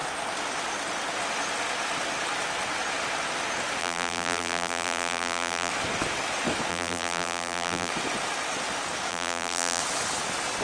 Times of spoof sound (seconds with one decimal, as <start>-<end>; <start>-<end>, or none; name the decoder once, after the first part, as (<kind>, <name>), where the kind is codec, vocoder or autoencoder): 3.8-5.7 (vocoder, BigVGAN v2); 6.7-7.9; 9.1-9.8